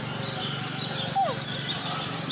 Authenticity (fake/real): real